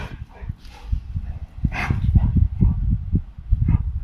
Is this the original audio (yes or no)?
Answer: yes